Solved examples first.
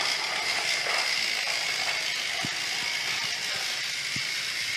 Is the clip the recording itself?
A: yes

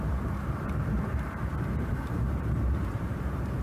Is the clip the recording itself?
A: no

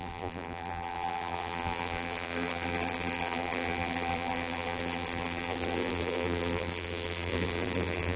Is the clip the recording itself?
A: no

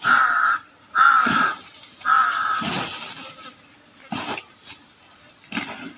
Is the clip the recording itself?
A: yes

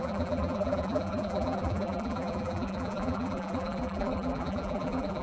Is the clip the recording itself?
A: no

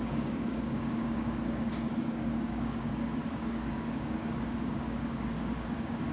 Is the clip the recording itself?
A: no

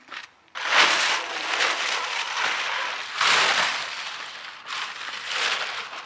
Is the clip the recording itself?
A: yes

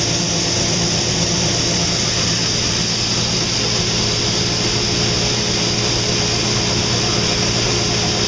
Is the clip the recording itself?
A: yes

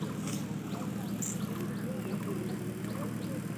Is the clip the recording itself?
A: yes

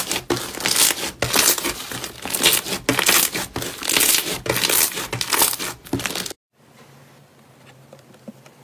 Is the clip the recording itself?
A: yes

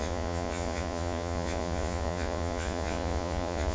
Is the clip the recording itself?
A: no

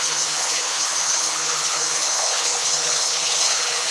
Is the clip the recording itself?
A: no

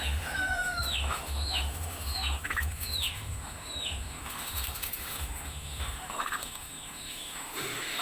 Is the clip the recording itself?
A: no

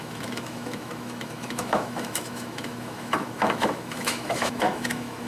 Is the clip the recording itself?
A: no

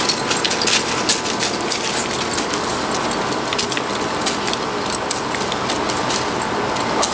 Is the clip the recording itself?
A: yes